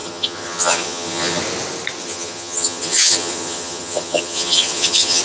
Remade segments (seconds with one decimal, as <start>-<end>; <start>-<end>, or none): 0.0-1.4; 2.0-5.2